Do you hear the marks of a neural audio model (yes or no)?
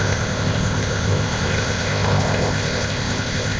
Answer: yes